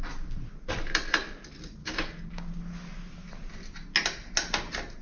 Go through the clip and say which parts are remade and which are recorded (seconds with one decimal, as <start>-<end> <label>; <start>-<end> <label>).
0.0-1.8 recorded; 1.8-2.6 remade; 2.6-5.0 recorded